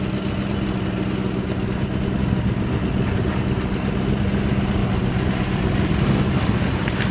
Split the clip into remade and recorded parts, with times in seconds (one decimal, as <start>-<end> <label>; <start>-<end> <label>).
0.0-4.8 recorded; 4.8-6.3 remade; 6.3-7.1 recorded